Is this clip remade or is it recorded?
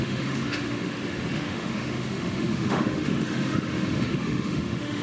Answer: remade